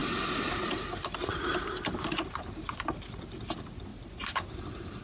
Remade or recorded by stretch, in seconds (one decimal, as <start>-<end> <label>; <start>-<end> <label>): 0.0-3.9 recorded; 3.9-4.6 remade; 4.6-5.0 recorded